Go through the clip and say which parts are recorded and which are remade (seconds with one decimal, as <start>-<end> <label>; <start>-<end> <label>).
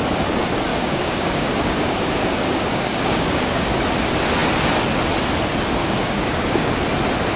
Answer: 0.0-0.7 recorded; 0.7-3.7 remade; 3.7-5.8 recorded; 5.8-6.8 remade; 6.8-7.4 recorded